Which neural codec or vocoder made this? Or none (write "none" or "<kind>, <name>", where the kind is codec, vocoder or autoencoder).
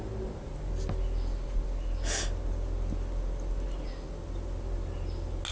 none